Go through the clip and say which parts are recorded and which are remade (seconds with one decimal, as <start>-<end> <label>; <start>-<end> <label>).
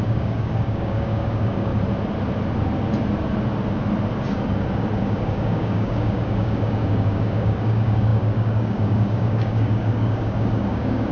0.0-1.7 remade; 1.7-5.0 recorded; 5.0-11.1 remade